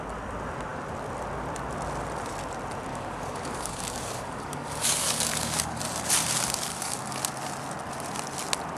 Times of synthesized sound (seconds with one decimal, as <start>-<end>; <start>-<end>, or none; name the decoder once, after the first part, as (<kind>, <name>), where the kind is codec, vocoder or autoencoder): 2.9-5.8 (codec, DAC); 6.7-7.2